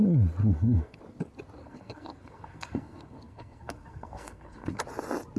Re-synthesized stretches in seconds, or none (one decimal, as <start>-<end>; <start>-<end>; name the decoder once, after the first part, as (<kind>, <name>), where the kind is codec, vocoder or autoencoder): 0.4-1.0 (codec, SNAC); 1.6-4.8